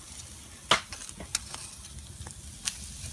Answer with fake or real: real